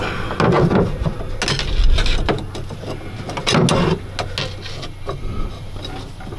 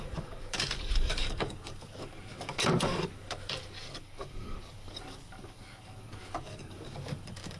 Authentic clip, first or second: first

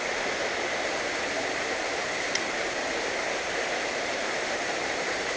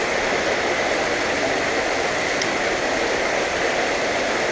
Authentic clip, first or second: second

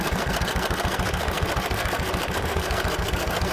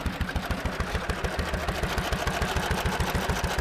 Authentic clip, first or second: second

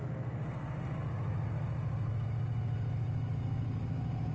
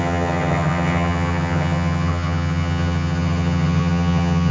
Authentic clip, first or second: first